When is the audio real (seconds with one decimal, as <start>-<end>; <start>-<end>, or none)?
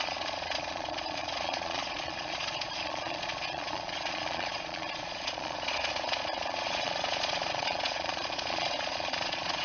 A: none